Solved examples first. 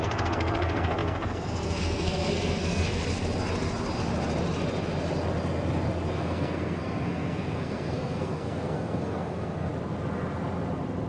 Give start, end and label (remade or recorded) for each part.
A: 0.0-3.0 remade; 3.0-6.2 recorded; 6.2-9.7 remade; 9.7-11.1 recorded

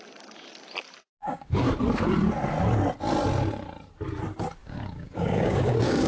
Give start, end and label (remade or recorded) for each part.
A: 0.0-1.2 recorded; 1.2-1.7 remade; 1.7-4.6 recorded; 4.6-6.1 remade

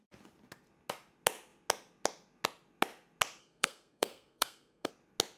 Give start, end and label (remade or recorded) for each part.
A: 0.0-3.4 recorded; 3.4-4.9 remade; 4.9-5.4 recorded

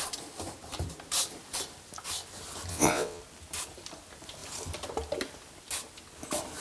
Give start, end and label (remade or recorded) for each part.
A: 0.0-2.7 recorded; 2.7-3.2 remade; 3.2-6.6 recorded

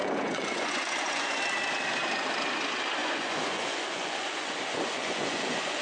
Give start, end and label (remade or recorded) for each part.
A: 0.0-1.4 remade; 1.4-3.0 recorded; 3.0-5.8 remade

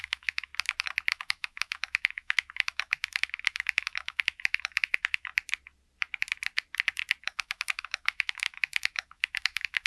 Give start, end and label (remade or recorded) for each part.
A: 0.0-0.5 remade; 0.5-1.1 recorded; 1.1-5.3 remade; 5.3-7.2 recorded; 7.2-9.9 remade

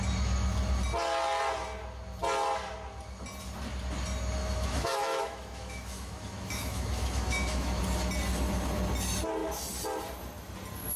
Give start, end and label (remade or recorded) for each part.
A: 0.0-4.4 recorded; 4.4-7.8 remade; 7.8-11.0 recorded

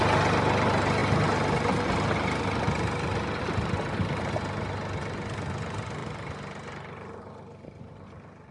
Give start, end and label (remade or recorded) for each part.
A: 0.0-8.5 recorded